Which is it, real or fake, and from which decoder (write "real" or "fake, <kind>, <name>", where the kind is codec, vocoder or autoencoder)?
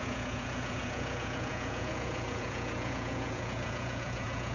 fake, vocoder, Vocos